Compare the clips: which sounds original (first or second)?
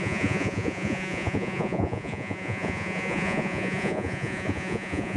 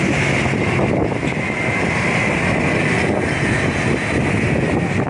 second